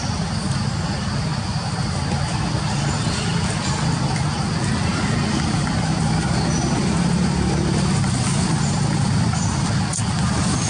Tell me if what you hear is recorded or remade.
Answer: recorded